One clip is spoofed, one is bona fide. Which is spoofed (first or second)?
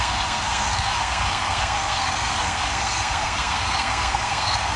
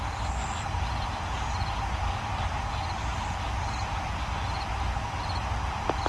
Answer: first